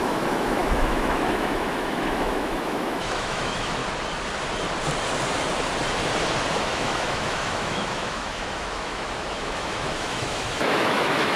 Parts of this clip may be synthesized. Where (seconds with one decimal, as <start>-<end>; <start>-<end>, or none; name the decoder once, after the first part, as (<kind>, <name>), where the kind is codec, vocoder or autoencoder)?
0.0-3.8 (autoencoder, DAC-VAE); 6.5-11.4